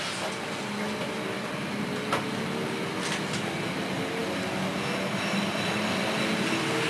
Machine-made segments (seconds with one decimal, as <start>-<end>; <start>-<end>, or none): none